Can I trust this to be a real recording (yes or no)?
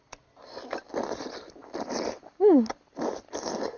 yes